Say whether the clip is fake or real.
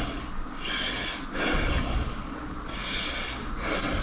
real